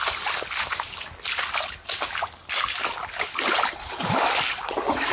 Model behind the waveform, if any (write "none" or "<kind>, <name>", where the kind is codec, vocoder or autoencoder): none